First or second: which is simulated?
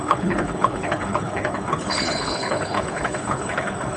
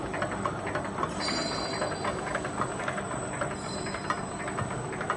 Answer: first